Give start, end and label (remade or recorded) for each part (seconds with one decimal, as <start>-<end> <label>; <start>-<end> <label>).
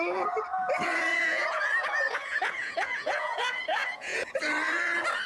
0.0-1.1 recorded; 1.1-4.3 remade; 4.3-5.3 recorded